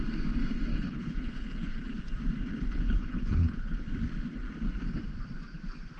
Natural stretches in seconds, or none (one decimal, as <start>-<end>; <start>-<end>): 0.0-0.7; 2.0-2.5; 3.9-6.0